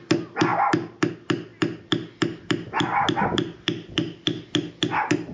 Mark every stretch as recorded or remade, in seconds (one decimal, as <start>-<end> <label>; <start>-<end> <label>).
0.0-5.3 recorded